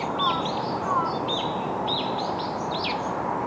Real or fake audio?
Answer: real